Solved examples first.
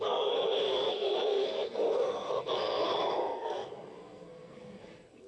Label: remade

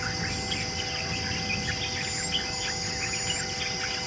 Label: recorded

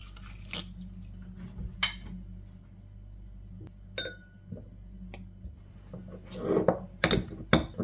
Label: recorded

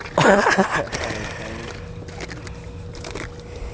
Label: recorded